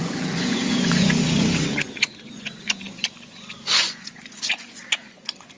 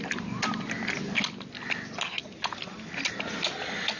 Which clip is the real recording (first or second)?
second